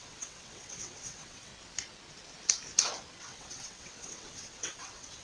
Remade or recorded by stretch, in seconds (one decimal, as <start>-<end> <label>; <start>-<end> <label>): 0.0-1.5 remade; 1.5-3.2 recorded; 3.2-5.2 remade